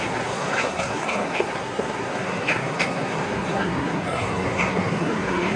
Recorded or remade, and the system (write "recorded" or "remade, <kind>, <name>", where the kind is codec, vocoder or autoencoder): remade, codec, SNAC